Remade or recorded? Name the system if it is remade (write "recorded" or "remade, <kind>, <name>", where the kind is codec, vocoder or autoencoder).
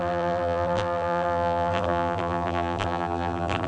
remade, vocoder, BigVGAN v2